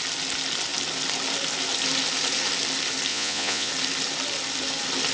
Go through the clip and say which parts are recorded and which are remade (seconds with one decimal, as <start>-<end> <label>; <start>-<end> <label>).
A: 0.0-3.1 recorded; 3.1-3.7 remade; 3.7-5.1 recorded